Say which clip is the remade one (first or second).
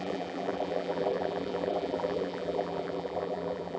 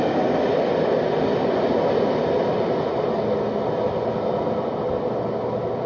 first